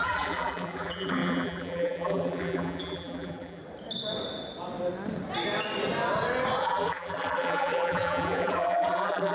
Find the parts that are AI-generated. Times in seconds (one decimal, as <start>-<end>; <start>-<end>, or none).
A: 0.0-3.6; 6.6-9.3